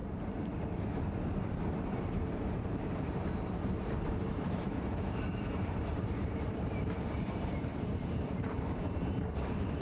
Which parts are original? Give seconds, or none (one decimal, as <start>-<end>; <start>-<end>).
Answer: 0.0-1.8